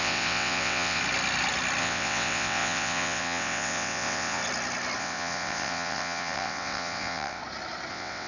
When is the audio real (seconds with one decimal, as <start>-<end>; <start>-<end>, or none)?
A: 1.0-1.8; 4.4-5.0; 7.4-7.9